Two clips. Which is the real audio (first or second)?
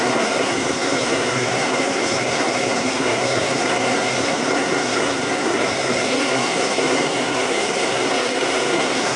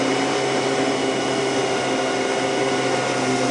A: second